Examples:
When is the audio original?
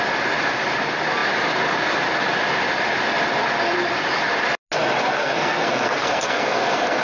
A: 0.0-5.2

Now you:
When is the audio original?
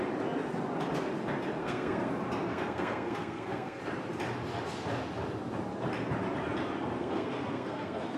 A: 0.0-1.6; 2.1-2.5; 3.8-7.0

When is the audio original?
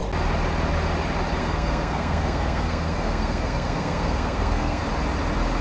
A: 0.0-1.4; 4.8-5.6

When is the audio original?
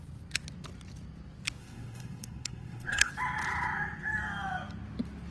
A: 0.0-1.6; 3.1-5.3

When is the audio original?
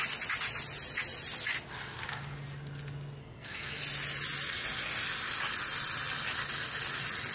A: 0.0-3.2; 3.8-7.3